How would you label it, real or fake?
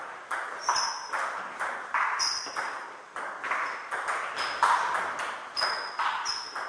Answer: real